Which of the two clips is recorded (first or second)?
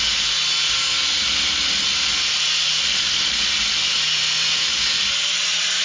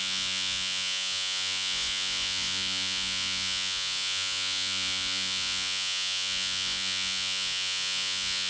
first